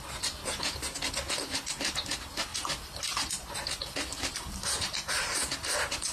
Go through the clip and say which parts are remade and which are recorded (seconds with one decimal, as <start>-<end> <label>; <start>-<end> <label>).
0.0-6.1 recorded

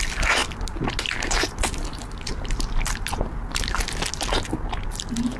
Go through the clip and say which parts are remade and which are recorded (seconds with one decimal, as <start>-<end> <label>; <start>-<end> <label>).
0.0-5.4 recorded

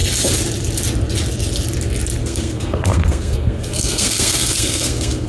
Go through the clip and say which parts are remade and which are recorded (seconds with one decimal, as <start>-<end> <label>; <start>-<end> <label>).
0.0-2.2 recorded; 2.2-5.3 remade

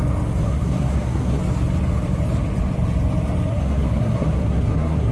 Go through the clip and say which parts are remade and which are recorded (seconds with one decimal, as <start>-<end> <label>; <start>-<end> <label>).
0.0-0.4 recorded; 0.4-1.4 remade; 1.4-3.5 recorded; 3.5-5.1 remade

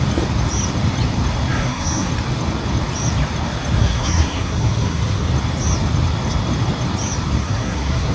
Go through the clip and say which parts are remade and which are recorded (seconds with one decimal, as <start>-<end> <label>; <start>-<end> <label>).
0.0-1.5 recorded; 1.5-2.1 remade; 2.1-3.8 recorded; 3.8-5.3 remade; 5.3-7.4 recorded; 7.4-8.1 remade

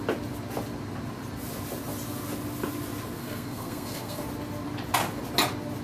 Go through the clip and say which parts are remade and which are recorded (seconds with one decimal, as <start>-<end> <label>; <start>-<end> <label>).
0.0-3.2 recorded; 3.2-4.2 remade; 4.2-5.8 recorded